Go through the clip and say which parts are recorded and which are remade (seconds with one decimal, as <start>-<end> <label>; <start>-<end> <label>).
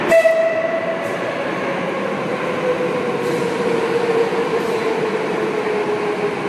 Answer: 0.0-6.5 recorded